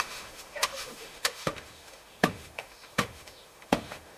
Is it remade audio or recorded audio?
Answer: remade